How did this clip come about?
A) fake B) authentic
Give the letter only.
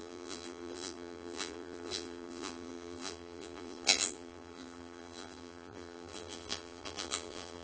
A